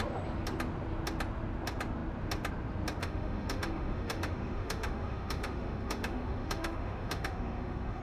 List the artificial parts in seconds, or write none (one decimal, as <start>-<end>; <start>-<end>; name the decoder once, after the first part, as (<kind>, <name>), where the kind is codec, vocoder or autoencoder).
3.0-8.0 (autoencoder, DAC-VAE)